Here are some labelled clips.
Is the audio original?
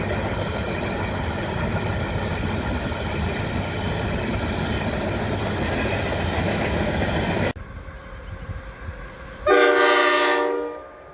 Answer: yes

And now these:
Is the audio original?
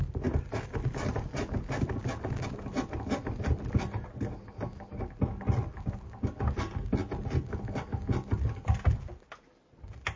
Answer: yes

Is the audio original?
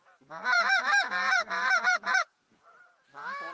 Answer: no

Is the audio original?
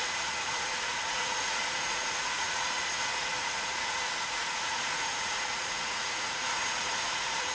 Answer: no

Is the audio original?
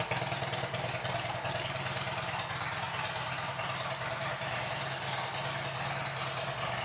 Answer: yes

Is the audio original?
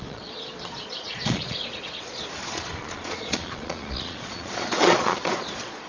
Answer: no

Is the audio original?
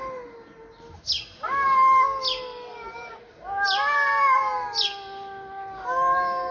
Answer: yes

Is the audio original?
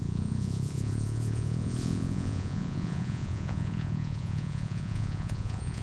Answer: no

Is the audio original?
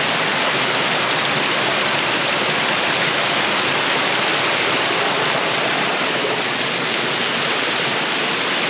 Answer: yes